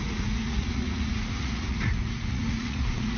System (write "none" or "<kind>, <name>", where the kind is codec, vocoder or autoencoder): vocoder, Vocos